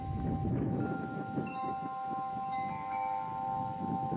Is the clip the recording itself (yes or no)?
no